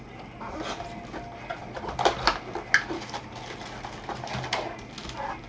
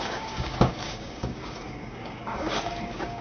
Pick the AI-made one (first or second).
second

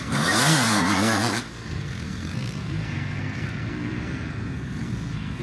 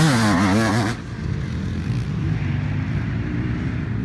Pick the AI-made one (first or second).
first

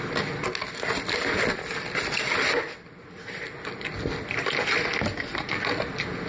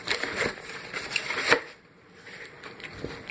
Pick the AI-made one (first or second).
second